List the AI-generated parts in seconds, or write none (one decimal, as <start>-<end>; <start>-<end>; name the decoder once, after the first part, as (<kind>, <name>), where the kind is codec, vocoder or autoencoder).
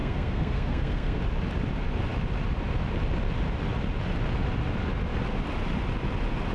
0.0-1.2 (codec, SNAC)